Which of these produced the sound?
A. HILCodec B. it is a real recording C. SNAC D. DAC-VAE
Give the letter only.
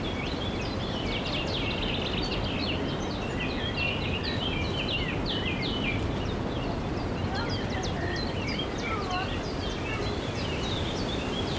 B